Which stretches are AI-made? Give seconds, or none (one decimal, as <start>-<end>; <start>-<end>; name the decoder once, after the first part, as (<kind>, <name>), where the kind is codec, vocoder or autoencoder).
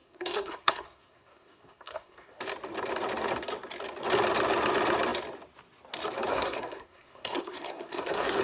0.0-2.4 (codec, SNAC); 6.3-8.4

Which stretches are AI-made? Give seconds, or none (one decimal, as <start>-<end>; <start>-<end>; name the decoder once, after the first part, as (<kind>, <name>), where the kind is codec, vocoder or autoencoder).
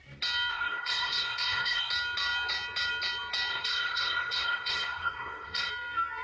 0.5-1.9 (codec, SNAC); 3.5-5.7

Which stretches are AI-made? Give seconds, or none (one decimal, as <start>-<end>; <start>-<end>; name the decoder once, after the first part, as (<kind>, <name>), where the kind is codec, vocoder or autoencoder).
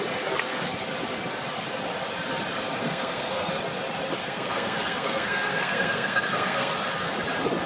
2.8-3.5 (codec, SNAC); 4.2-6.7